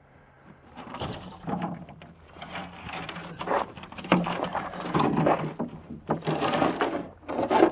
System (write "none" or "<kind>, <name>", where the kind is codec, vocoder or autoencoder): vocoder, BigVGAN v2